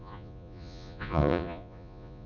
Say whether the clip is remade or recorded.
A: remade